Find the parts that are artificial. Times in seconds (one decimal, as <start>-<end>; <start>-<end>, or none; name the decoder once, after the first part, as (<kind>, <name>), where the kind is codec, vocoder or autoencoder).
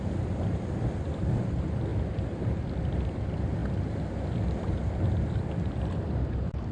none